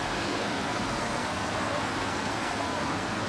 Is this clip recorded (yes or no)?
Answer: no